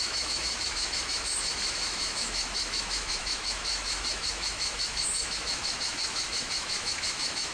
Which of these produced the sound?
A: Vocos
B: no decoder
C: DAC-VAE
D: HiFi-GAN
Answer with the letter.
C